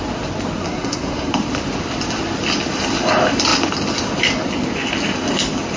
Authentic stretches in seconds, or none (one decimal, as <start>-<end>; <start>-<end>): 0.0-0.6; 1.3-5.8